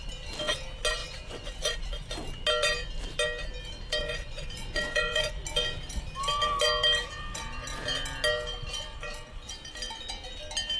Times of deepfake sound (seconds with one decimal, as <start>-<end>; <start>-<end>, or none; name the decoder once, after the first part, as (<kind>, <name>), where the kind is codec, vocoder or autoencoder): 1.0-2.1 (vocoder, Vocos); 4.0-5.4; 8.9-9.5